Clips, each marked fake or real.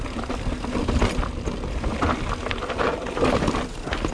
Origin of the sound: real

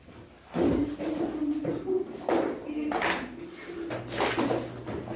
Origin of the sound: real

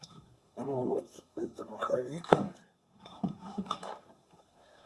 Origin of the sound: fake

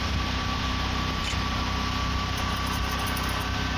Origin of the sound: real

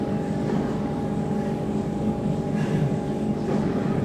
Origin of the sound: fake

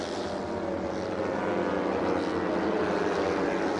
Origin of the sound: real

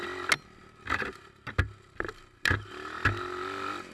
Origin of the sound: real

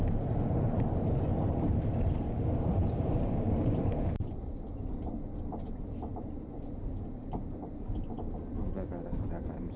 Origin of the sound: fake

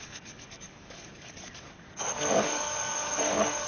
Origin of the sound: fake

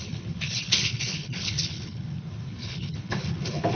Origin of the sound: fake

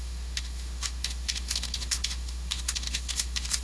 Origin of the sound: fake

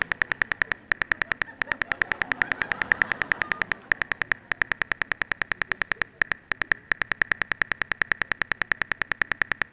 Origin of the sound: real